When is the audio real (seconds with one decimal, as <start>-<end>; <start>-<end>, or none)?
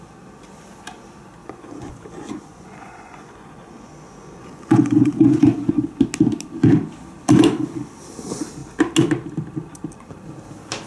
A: 0.0-1.4; 5.7-10.9